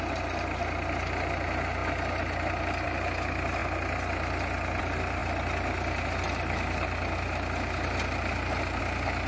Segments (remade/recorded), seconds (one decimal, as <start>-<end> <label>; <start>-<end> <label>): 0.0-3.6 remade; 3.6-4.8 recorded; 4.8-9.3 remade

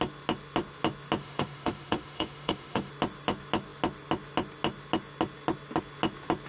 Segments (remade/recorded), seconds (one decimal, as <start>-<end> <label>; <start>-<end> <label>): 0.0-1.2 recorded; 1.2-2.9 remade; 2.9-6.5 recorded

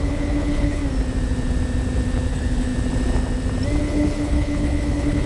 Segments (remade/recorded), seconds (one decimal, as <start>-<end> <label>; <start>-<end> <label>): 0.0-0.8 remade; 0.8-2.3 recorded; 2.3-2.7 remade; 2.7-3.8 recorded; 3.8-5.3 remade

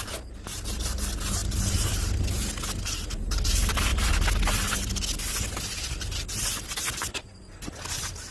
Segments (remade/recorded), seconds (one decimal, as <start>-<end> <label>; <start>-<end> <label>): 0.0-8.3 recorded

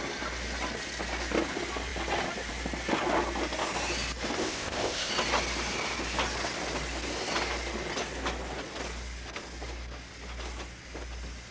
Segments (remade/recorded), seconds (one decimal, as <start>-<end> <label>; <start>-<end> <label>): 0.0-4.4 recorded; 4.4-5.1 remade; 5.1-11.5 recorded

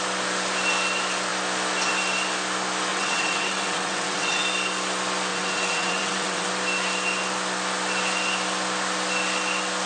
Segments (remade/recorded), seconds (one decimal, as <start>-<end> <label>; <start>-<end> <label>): 0.0-2.9 recorded; 2.9-4.4 remade; 4.4-5.3 recorded; 5.3-6.5 remade; 6.5-9.9 recorded

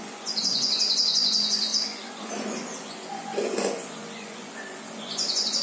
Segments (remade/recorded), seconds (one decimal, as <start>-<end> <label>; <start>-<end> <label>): 0.0-5.6 remade

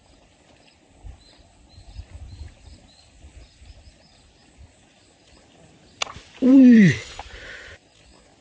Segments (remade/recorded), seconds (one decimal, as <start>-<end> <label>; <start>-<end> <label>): 0.0-6.5 recorded; 6.5-7.2 remade; 7.2-8.4 recorded